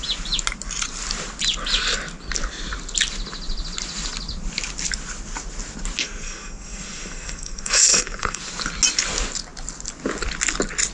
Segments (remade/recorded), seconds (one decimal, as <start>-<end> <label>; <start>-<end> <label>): 0.0-6.0 recorded; 6.0-8.4 remade; 8.4-10.9 recorded